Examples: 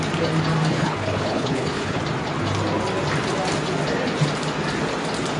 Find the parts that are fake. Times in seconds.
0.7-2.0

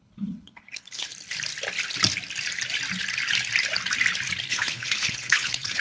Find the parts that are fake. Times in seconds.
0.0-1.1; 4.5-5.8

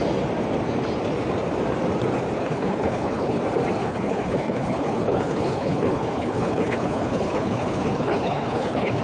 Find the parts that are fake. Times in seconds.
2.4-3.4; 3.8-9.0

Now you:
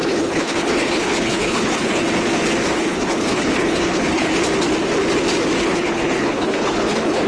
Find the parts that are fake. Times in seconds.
0.0-2.0; 2.7-4.3; 5.6-7.3